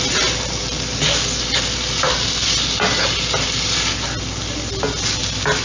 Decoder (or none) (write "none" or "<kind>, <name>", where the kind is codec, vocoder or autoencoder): none